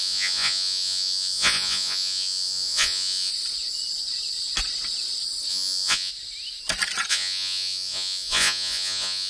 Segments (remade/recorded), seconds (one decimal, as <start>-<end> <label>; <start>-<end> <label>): 0.0-3.3 remade; 3.3-5.5 recorded; 5.5-6.1 remade; 6.1-7.1 recorded; 7.1-9.3 remade